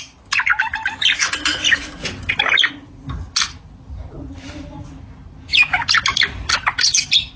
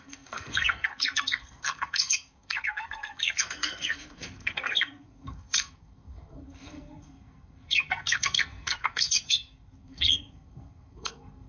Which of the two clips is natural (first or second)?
first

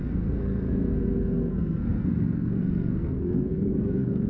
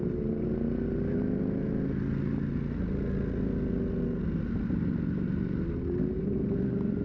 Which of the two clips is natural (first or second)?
second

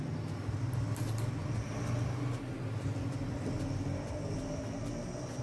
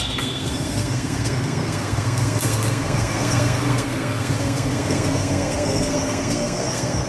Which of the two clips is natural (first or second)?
first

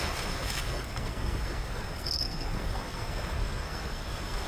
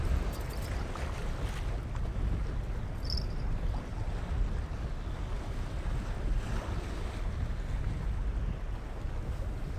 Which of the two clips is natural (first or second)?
second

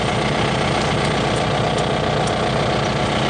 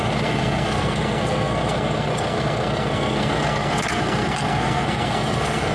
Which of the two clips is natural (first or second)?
first